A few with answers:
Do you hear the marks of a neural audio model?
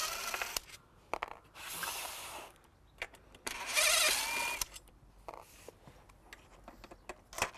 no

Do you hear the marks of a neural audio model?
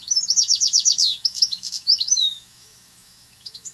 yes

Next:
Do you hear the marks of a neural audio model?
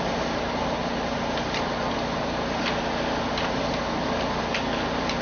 no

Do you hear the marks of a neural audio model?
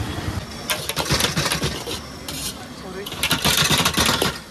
no